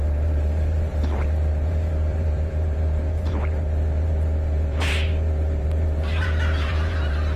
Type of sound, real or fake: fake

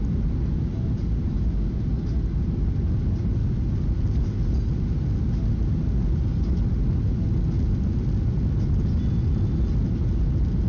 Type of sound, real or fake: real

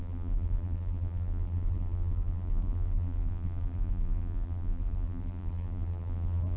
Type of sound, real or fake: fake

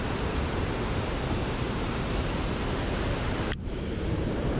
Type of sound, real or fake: fake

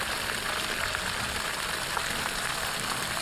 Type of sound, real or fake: fake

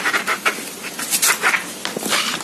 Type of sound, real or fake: fake